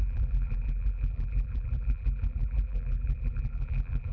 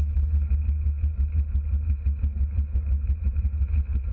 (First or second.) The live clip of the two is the second